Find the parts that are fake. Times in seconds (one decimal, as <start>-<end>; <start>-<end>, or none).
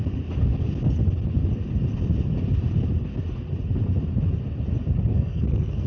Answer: 5.1-5.9